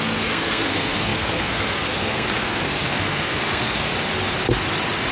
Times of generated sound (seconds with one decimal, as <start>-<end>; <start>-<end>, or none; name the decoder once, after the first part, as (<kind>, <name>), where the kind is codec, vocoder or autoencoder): 0.0-3.9 (codec, SNAC)